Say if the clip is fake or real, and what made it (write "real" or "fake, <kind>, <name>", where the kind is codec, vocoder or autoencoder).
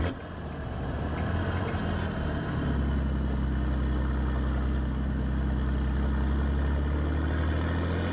real